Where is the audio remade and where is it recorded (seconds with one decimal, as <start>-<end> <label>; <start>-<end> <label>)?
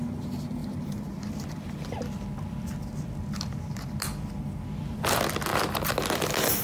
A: 0.0-6.6 recorded